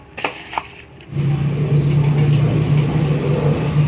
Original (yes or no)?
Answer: no